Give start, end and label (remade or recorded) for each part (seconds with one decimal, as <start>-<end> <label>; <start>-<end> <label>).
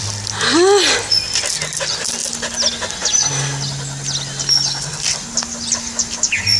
0.0-6.6 recorded